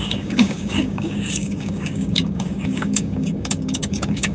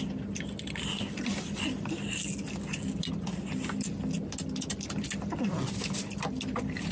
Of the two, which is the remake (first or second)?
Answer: first